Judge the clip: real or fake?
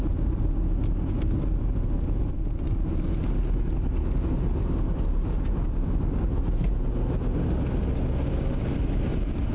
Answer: real